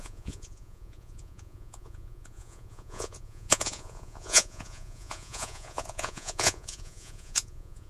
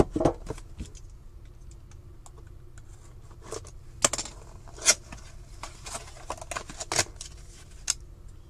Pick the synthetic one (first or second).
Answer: first